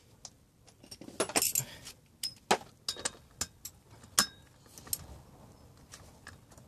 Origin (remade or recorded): recorded